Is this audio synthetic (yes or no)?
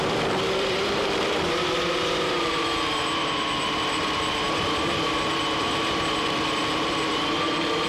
yes